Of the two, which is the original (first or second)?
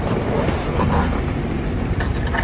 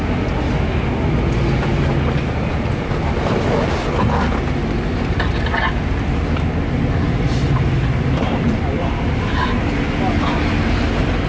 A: second